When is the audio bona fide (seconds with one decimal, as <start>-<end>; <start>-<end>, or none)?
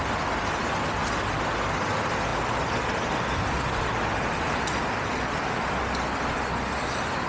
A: 0.0-7.3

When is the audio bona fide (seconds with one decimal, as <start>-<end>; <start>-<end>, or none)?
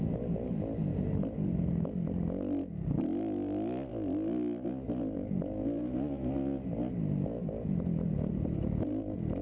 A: 0.0-9.4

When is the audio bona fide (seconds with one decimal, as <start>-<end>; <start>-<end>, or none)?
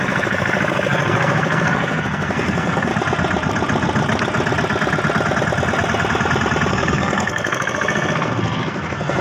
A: 2.9-6.7